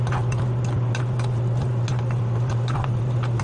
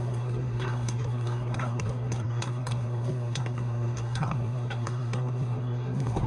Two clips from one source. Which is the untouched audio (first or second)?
first